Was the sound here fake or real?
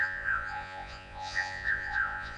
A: fake